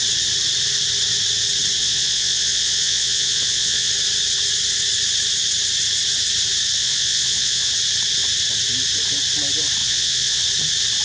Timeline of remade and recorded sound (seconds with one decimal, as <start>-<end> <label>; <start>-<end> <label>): 0.0-1.8 recorded; 1.8-3.9 remade; 3.9-6.8 recorded; 6.8-7.7 remade; 7.7-9.8 recorded; 9.8-10.4 remade; 10.4-11.0 recorded